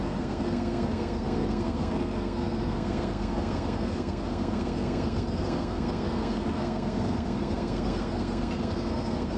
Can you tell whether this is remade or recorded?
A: remade